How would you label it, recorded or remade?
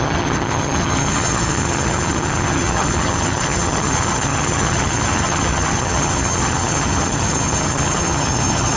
remade